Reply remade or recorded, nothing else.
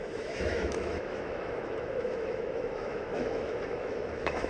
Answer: remade